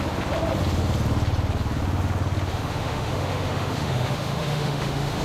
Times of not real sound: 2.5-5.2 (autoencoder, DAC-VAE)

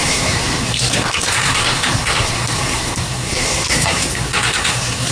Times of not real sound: 0.0-5.1 (codec, SNAC)

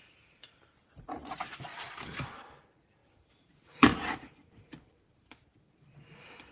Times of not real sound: 0.0-6.5 (vocoder, BigVGAN v2)